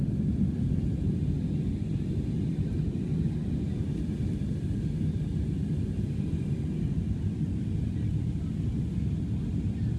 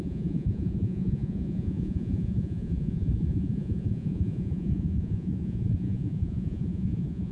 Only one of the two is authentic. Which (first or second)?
first